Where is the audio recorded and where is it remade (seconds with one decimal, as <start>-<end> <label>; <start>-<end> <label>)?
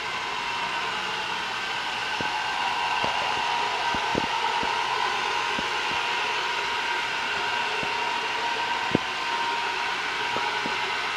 0.0-11.2 recorded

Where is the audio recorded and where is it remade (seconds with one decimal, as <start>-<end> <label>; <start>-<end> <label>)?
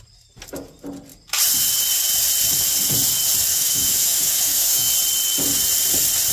0.0-3.5 recorded; 3.5-4.9 remade; 4.9-6.3 recorded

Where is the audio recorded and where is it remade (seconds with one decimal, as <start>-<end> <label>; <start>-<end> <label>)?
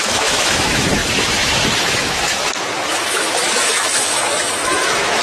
0.0-5.2 remade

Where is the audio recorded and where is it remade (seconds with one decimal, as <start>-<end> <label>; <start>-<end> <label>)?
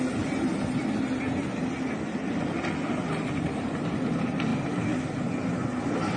0.0-6.2 recorded